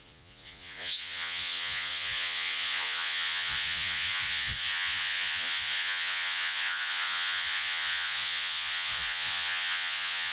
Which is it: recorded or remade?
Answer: remade